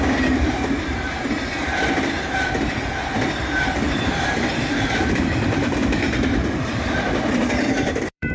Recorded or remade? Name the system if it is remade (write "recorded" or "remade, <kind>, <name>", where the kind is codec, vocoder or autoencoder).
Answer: remade, vocoder, BigVGAN v2